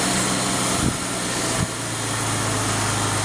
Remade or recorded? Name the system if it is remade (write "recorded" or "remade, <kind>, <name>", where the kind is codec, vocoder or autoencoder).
recorded